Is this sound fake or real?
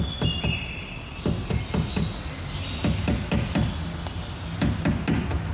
real